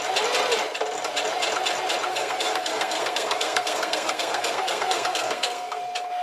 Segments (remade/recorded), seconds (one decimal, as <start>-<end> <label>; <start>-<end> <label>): 0.0-2.1 recorded; 2.1-5.8 remade; 5.8-6.2 recorded